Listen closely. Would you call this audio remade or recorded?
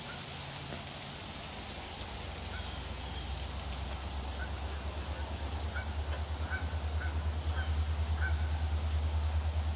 recorded